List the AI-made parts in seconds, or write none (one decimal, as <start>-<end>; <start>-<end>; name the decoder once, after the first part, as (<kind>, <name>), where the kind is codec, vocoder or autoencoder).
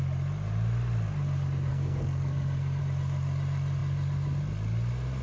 1.7-2.8 (codec, SNAC)